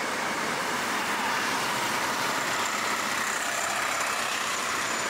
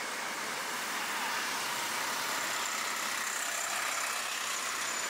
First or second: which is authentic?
second